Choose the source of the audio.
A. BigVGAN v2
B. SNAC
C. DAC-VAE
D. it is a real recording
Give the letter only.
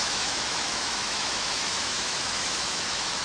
C